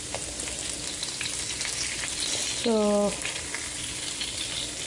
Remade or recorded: recorded